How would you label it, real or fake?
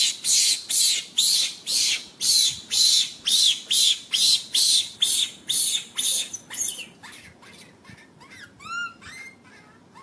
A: real